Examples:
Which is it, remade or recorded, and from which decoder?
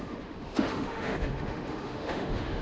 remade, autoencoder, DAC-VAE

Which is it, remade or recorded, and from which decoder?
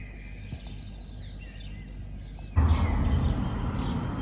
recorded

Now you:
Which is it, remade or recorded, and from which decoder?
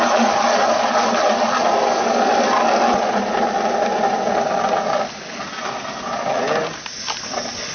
recorded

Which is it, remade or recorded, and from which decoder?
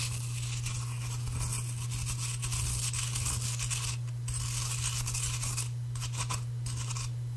recorded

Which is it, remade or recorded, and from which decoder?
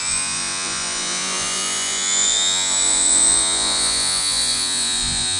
remade, vocoder, Vocos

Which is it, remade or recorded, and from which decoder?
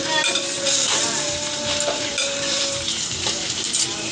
remade, vocoder, BigVGAN v2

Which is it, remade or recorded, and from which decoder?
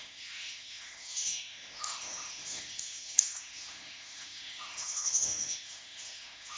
remade, autoencoder, DAC-VAE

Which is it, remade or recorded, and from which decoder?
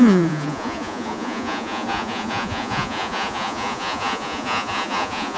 remade, vocoder, Vocos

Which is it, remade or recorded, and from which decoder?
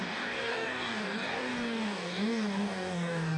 remade, codec, DAC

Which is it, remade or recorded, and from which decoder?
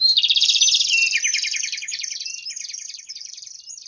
remade, vocoder, BigVGAN v2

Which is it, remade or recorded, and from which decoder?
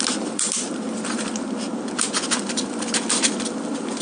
recorded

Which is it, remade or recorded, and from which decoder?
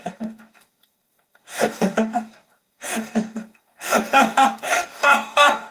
remade, codec, DAC